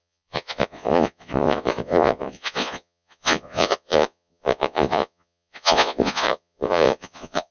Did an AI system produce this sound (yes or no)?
yes